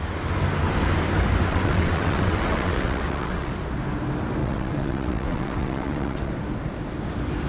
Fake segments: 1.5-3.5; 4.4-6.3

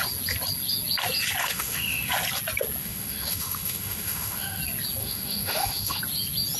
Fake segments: 1.4-2.1; 2.8-4.6; 5.0-6.0